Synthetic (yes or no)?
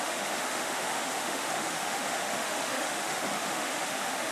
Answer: yes